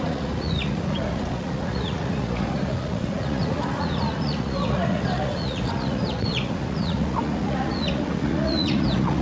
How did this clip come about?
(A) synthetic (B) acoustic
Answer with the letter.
A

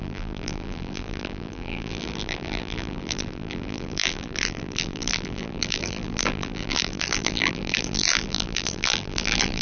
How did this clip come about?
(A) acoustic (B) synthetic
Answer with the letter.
B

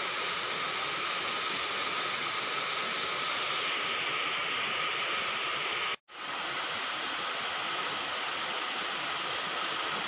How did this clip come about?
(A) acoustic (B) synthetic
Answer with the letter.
A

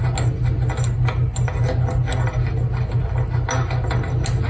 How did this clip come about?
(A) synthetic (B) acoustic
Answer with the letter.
B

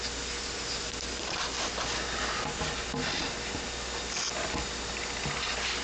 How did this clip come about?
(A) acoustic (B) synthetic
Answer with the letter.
A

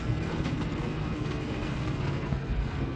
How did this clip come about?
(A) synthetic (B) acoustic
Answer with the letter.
A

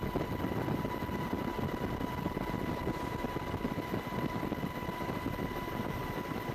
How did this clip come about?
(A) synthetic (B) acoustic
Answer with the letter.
B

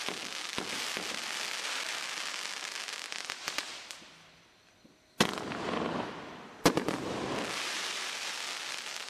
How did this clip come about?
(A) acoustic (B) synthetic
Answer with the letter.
A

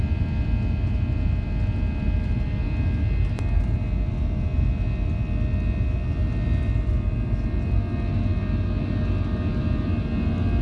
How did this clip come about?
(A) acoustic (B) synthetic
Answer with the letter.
A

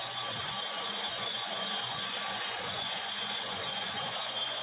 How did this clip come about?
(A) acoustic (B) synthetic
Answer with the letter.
B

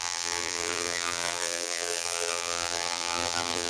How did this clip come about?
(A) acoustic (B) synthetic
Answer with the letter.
B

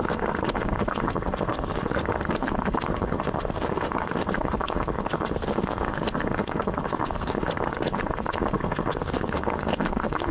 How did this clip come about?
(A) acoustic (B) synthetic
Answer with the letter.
B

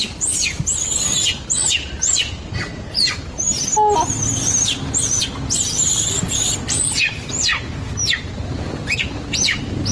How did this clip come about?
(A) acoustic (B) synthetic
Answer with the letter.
A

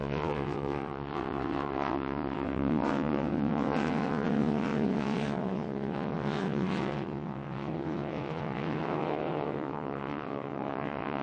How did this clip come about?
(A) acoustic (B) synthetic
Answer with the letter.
B